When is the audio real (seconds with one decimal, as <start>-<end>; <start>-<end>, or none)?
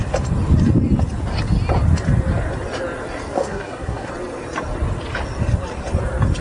0.0-3.4; 4.1-6.4